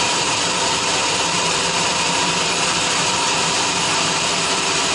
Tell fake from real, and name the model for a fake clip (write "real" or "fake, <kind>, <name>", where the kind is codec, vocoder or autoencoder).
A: fake, vocoder, BigVGAN v2